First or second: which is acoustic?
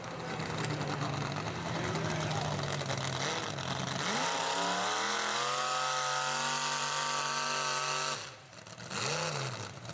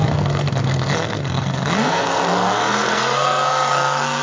first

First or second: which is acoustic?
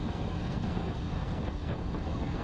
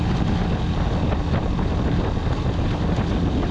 second